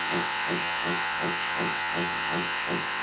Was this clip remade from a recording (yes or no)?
yes